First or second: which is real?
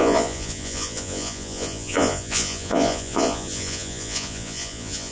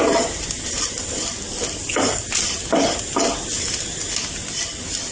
second